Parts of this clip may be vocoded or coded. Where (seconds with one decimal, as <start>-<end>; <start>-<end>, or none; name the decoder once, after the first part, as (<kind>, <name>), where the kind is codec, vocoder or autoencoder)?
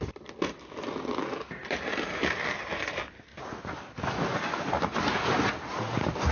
none